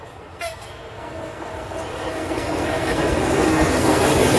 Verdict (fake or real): fake